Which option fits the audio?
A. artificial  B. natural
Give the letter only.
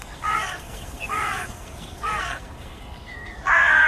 A